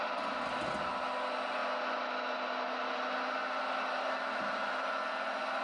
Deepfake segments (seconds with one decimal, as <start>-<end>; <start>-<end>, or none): none